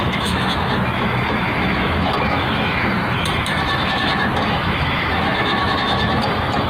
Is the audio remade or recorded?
remade